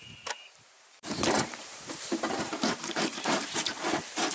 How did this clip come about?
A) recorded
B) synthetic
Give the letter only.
B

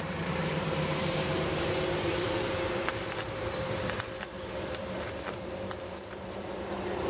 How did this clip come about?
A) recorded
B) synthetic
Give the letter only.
B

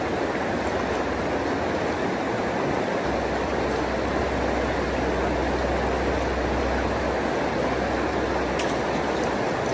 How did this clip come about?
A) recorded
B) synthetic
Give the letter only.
A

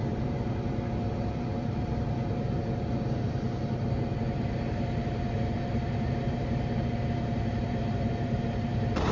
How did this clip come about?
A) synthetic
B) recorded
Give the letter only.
A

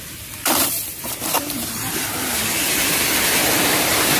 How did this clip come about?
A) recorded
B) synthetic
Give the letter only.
B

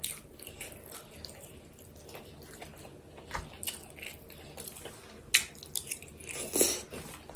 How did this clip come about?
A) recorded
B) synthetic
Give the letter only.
A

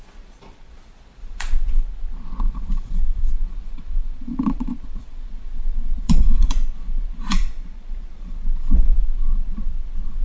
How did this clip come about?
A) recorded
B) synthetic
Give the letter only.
B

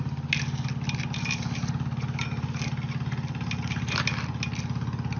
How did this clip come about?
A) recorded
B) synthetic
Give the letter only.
A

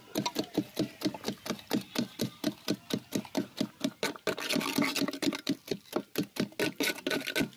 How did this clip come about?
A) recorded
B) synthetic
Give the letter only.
A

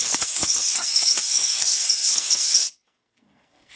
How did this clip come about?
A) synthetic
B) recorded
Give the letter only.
A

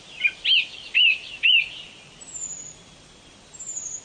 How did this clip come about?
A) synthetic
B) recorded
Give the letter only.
B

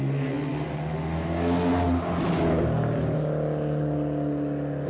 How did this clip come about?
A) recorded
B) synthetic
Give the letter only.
A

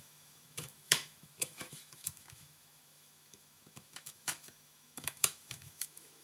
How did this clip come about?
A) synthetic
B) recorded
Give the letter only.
A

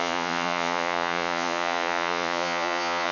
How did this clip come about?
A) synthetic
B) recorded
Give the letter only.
A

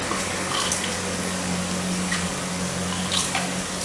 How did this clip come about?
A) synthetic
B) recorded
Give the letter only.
A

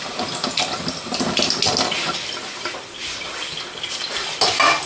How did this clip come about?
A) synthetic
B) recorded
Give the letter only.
B